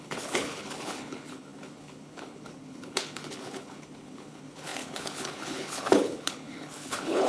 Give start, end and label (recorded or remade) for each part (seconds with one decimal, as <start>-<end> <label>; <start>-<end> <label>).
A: 0.0-7.3 remade